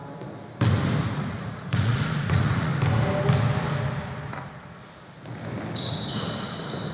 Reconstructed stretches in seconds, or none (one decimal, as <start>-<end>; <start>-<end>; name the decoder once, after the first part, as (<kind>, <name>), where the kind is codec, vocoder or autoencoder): 1.1-2.7 (vocoder, Vocos)